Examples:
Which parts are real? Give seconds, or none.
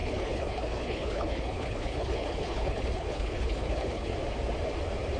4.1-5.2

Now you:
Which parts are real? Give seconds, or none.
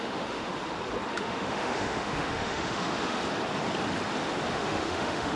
0.5-1.1; 3.2-4.5